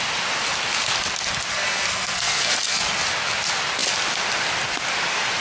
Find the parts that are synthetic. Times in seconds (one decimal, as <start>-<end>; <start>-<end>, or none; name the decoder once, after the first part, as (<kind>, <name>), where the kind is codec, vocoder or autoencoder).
1.5-2.9 (codec, SNAC)